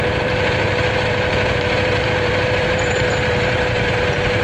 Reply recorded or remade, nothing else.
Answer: remade